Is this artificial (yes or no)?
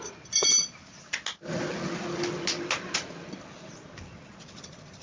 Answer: no